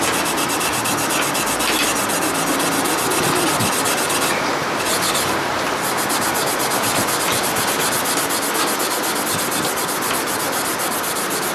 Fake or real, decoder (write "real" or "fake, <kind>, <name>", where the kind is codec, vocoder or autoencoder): real